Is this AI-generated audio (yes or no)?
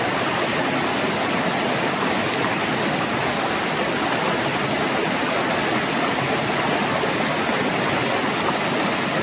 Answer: no